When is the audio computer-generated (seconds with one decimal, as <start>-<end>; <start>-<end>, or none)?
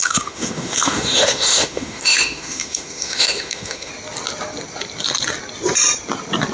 0.0-3.9